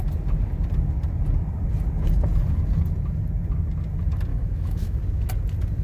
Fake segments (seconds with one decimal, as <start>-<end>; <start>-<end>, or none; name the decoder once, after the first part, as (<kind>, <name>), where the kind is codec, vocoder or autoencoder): 4.3-5.0 (autoencoder, DAC-VAE)